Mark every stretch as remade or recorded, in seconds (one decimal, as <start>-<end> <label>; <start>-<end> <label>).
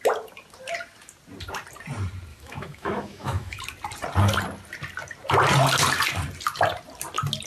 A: 0.0-2.3 recorded; 2.3-3.6 remade; 3.6-7.5 recorded